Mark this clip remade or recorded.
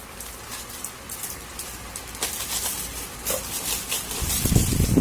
recorded